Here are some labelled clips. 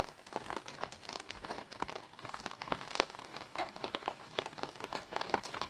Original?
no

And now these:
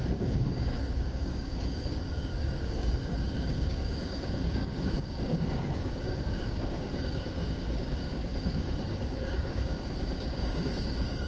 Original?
no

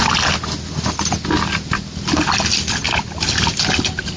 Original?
yes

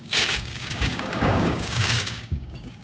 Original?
no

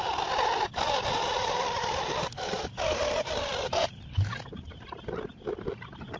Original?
yes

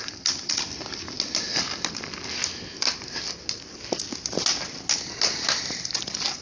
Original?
yes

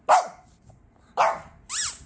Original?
yes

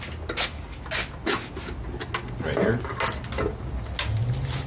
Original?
yes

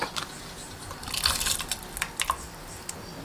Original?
yes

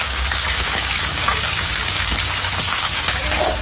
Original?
no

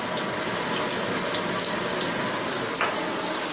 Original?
yes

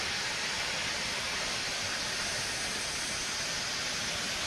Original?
yes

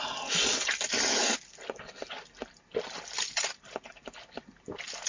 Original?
yes